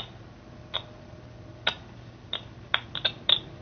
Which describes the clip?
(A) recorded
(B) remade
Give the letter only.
A